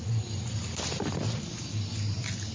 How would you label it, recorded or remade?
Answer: recorded